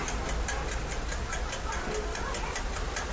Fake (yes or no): no